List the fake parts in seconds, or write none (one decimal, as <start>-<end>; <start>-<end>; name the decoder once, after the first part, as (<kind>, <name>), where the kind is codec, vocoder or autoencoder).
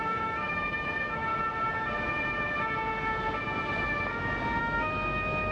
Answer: 0.0-1.3 (autoencoder, DAC-VAE); 4.6-5.5